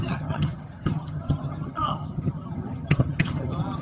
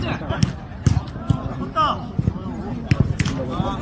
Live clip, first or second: second